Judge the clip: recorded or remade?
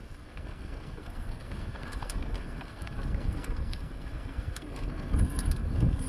remade